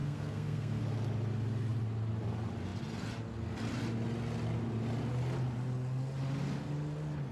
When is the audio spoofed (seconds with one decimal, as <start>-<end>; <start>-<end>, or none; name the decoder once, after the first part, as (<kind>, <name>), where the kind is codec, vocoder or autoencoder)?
0.0-0.8 (codec, SNAC)